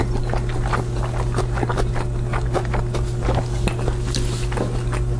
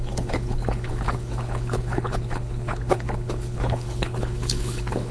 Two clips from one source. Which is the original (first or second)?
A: first